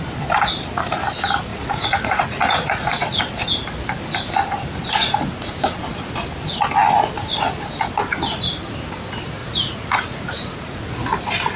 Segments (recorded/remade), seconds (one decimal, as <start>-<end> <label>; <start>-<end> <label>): 0.0-1.5 recorded; 1.5-3.2 remade; 3.2-9.4 recorded; 9.4-10.9 remade; 10.9-11.6 recorded